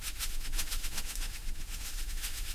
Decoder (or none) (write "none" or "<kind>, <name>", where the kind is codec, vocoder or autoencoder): autoencoder, DAC-VAE